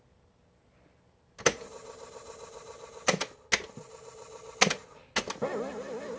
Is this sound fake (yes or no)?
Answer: no